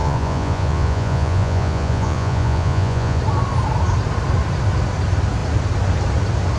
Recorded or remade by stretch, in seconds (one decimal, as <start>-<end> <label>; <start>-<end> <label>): 0.0-3.2 remade; 3.2-6.6 recorded